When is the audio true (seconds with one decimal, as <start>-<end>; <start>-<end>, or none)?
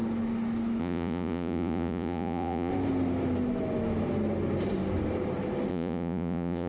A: 0.0-0.8; 2.7-5.7